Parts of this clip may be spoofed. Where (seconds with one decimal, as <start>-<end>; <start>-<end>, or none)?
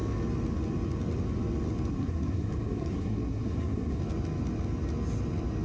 1.9-4.0